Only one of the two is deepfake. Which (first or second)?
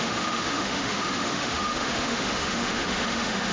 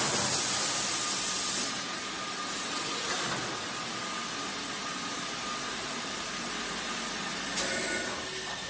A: first